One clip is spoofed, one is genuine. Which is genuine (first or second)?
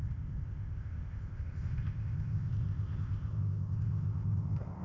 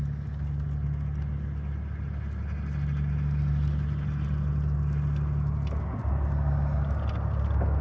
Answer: second